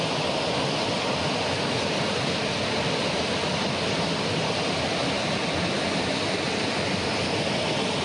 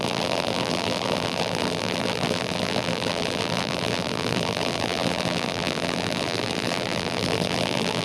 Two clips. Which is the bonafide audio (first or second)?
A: first